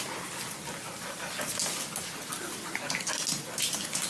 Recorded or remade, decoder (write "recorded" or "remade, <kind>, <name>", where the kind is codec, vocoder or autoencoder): recorded